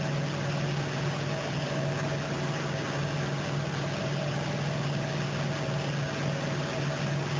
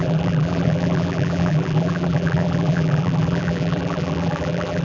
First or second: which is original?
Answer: first